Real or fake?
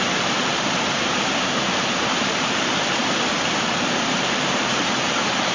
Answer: fake